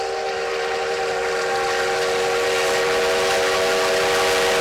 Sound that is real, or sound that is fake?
real